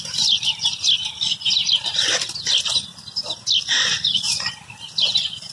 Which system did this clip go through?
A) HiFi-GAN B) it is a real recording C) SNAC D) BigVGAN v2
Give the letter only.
B